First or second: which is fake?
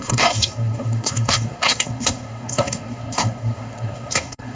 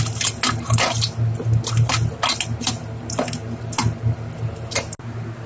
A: first